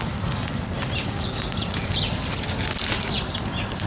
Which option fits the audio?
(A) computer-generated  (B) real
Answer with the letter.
B